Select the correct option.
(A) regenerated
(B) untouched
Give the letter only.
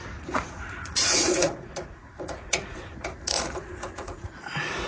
A